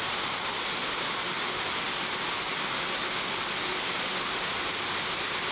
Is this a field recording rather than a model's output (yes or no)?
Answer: yes